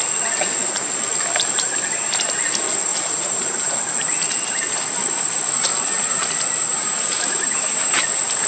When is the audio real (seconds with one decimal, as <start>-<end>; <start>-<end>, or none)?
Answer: 0.0-2.9; 3.8-6.7; 8.0-8.5